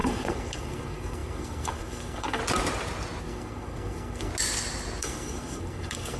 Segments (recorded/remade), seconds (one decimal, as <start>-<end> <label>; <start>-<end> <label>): 0.0-2.4 remade; 2.4-3.2 recorded; 3.2-4.3 remade; 4.3-5.0 recorded; 5.0-6.2 remade